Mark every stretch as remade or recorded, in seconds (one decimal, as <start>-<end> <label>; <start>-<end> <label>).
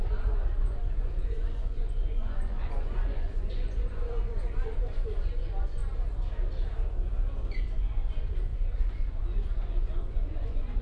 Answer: 0.0-5.8 remade; 5.8-7.4 recorded; 7.4-10.8 remade